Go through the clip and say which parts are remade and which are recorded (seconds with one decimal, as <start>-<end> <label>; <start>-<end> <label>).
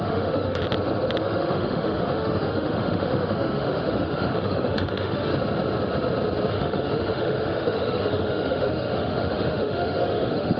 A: 0.0-0.6 remade; 0.6-1.2 recorded; 1.2-5.3 remade; 5.3-6.5 recorded; 6.5-10.6 remade